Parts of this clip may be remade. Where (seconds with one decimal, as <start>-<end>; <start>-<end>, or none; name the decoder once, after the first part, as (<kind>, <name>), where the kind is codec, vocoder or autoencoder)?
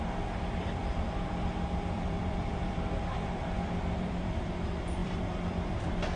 0.8-4.5 (vocoder, BigVGAN v2); 5.0-6.2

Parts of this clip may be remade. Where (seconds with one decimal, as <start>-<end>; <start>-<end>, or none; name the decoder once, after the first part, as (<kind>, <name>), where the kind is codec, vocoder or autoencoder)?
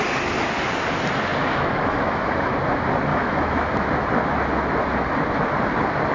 1.4-2.5 (autoencoder, DAC-VAE); 3.1-3.7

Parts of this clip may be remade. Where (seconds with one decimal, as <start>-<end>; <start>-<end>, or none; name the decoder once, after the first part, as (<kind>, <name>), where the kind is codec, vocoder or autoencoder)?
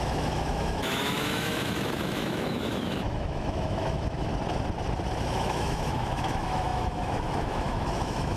0.0-4.3 (autoencoder, DAC-VAE); 5.2-8.4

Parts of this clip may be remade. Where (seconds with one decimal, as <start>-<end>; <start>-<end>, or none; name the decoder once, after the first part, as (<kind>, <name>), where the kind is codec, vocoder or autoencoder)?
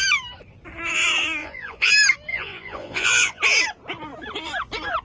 1.4-1.9 (vocoder, Vocos); 2.3-3.4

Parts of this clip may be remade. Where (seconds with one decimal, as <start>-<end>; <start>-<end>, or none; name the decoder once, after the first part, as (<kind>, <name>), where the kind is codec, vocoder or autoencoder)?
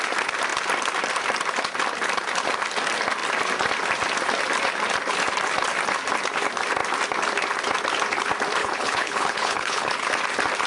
8.6-9.9 (codec, HILCodec)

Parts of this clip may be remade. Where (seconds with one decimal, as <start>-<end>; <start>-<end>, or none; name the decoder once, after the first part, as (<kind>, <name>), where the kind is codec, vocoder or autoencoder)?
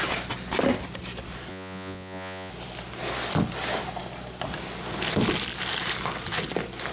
1.5-2.5 (vocoder, Vocos)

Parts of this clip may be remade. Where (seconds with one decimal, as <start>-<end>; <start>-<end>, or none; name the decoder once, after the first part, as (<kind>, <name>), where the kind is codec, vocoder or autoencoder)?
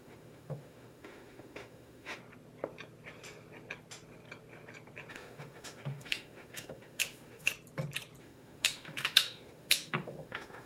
0.0-2.2 (autoencoder, DAC-VAE); 5.1-7.5; 8.2-10.7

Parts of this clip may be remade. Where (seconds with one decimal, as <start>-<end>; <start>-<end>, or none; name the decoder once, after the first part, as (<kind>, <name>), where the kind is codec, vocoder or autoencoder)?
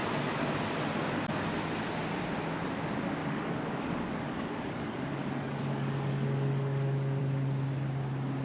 3.2-7.2 (codec, DAC)